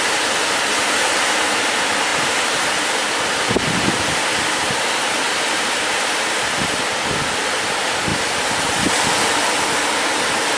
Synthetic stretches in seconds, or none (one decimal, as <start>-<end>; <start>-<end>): 2.1-6.8